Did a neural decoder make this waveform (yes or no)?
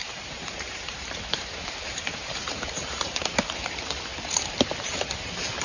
yes